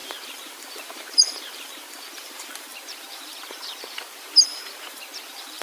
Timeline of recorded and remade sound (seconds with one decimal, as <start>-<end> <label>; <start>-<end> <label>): 0.0-5.6 remade